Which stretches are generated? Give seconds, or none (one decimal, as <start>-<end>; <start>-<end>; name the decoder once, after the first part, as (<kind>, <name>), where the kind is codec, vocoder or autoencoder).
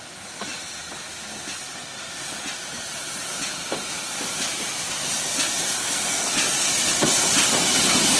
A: 5.8-6.3 (codec, SNAC)